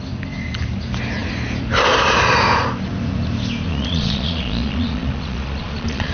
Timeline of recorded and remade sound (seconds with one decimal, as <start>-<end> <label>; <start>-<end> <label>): 0.0-3.7 recorded; 3.7-6.1 remade